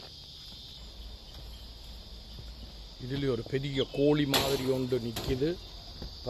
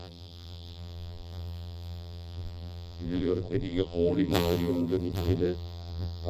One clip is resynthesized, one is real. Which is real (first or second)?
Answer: first